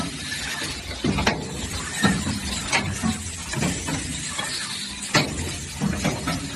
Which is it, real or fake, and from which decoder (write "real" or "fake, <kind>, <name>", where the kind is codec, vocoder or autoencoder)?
real